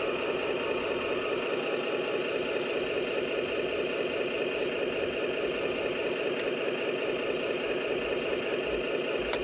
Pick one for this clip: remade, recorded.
recorded